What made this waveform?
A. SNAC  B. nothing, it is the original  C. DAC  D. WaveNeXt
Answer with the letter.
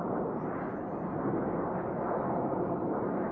B